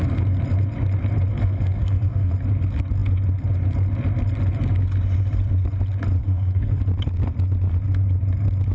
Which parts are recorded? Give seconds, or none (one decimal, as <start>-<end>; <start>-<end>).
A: 0.0-1.3; 2.3-6.2; 6.8-8.7